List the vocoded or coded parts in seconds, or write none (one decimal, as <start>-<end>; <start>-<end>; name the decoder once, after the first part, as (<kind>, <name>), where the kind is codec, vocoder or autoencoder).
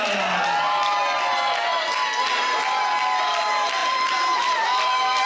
3.8-5.3 (vocoder, BigVGAN v2)